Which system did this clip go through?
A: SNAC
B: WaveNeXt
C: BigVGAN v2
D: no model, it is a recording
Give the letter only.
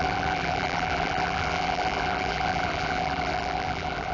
C